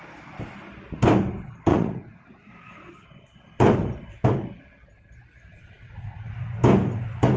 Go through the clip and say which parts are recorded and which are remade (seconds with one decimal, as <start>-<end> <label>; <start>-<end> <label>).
0.0-1.7 recorded; 1.7-2.5 remade; 2.5-5.5 recorded; 5.5-6.4 remade; 6.4-7.4 recorded